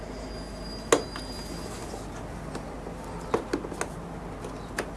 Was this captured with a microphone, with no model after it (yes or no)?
yes